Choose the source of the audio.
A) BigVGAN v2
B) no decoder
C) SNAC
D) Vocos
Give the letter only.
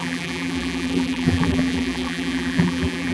A